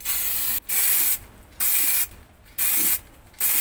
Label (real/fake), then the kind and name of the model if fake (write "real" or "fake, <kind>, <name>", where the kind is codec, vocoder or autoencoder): real